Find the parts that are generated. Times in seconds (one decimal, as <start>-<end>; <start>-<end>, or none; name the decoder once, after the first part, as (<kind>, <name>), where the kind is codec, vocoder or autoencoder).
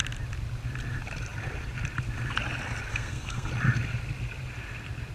2.9-3.5 (codec, SNAC)